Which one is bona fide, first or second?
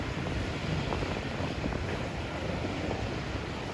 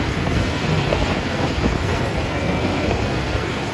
first